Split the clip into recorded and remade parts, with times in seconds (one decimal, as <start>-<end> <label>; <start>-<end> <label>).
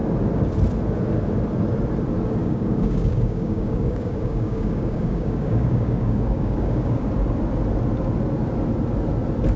0.0-2.4 recorded; 2.4-7.1 remade; 7.1-9.6 recorded